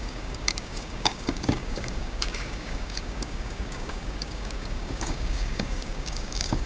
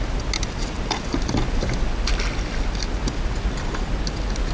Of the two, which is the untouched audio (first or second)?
second